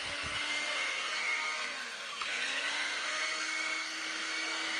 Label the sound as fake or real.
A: fake